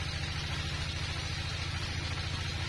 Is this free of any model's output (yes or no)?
yes